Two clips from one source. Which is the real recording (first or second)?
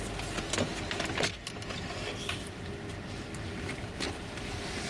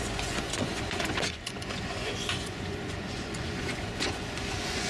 first